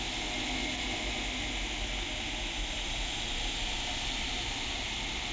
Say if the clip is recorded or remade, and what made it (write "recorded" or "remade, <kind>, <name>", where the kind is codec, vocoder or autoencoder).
recorded